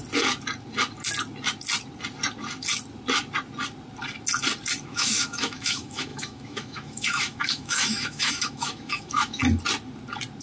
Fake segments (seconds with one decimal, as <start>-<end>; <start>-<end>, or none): 4.8-9.4